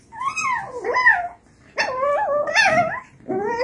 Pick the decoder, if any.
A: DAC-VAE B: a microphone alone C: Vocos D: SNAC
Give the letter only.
B